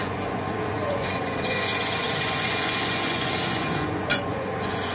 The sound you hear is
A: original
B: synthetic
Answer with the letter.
B